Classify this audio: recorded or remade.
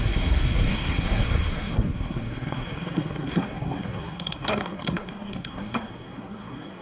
remade